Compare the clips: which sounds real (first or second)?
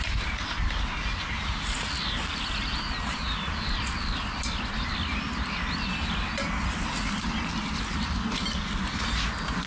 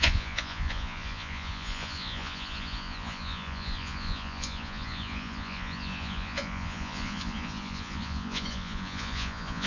first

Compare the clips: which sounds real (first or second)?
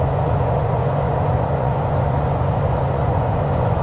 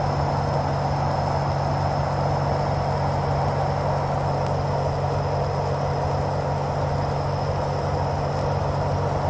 second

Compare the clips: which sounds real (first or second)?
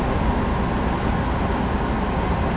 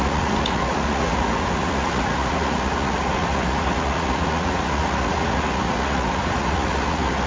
first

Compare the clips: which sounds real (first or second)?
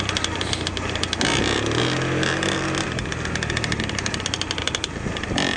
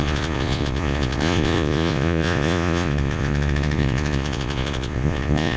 first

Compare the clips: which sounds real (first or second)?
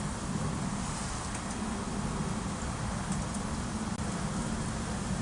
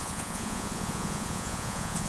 first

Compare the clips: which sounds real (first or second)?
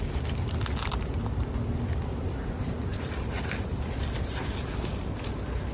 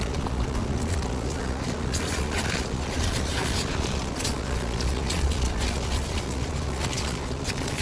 first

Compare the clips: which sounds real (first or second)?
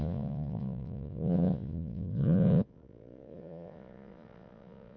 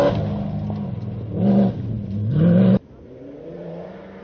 second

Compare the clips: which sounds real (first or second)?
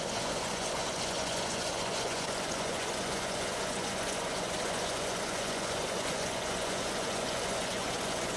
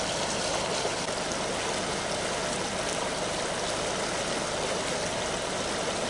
second